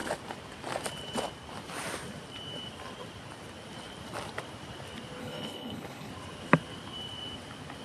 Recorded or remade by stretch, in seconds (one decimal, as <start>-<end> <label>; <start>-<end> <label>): 0.0-5.2 recorded; 5.2-6.1 remade; 6.1-7.8 recorded